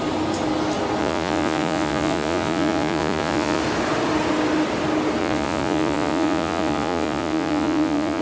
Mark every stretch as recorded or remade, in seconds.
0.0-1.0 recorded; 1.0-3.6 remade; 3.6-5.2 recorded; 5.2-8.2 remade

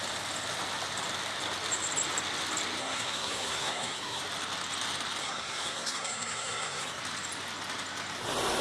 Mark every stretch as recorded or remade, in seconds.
0.0-2.8 recorded; 2.8-4.2 remade; 4.2-5.2 recorded; 5.2-7.0 remade; 7.0-8.6 recorded

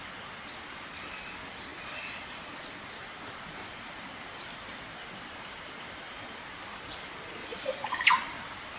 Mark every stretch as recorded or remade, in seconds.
0.0-8.8 recorded

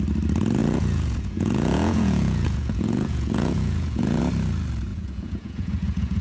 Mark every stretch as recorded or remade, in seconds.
0.0-0.6 recorded; 0.6-4.2 remade; 4.2-4.9 recorded; 4.9-6.2 remade